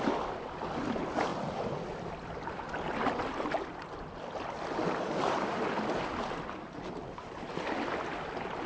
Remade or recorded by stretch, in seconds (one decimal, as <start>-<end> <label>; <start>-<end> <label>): 0.0-8.7 recorded